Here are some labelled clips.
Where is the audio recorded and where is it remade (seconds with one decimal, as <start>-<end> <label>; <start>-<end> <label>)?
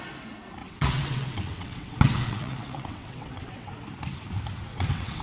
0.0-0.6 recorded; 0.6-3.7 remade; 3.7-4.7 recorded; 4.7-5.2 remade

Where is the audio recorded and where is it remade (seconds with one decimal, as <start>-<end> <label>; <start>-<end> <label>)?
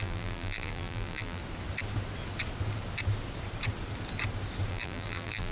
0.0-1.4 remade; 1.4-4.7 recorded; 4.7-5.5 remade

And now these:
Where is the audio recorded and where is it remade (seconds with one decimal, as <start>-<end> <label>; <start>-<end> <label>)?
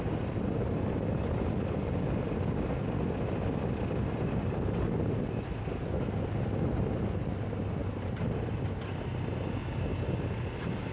0.0-7.8 recorded; 7.8-8.7 remade; 8.7-10.9 recorded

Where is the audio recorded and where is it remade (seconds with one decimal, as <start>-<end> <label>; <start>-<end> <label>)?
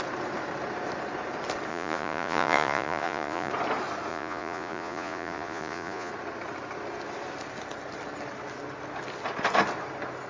0.0-1.7 recorded; 1.7-3.5 remade; 3.5-4.1 recorded; 4.1-6.1 remade; 6.1-10.3 recorded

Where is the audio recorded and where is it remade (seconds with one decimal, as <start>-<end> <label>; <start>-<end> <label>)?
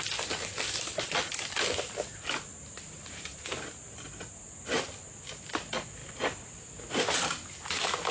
0.0-2.5 recorded; 2.5-3.2 remade; 3.2-8.1 recorded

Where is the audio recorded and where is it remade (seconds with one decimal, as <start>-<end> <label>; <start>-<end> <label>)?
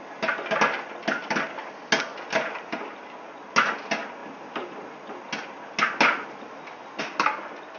0.0-7.8 recorded